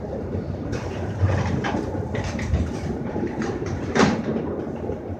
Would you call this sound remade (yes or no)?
yes